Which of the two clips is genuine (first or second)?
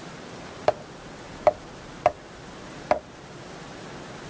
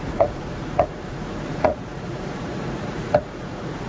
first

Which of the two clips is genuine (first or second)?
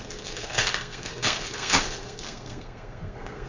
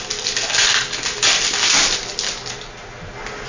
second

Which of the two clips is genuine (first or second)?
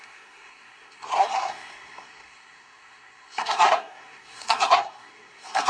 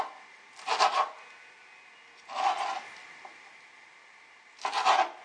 second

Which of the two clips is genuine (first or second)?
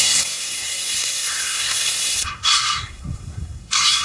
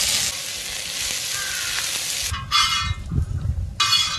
second